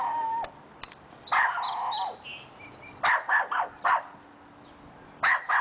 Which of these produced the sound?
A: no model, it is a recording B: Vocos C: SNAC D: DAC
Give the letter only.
A